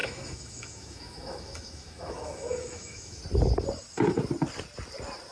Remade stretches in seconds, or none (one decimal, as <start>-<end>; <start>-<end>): 0.0-3.2